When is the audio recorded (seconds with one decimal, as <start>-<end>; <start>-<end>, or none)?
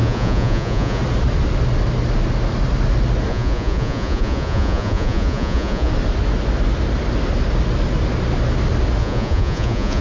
1.0-3.3; 5.9-9.0